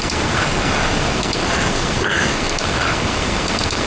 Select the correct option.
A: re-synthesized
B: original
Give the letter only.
A